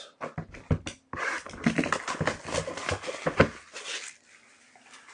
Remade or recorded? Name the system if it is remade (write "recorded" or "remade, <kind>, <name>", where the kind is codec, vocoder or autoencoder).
recorded